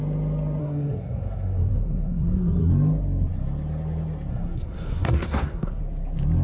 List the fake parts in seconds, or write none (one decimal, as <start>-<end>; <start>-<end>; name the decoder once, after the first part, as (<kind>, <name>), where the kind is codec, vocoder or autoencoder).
0.6-2.7 (codec, SNAC); 4.3-5.8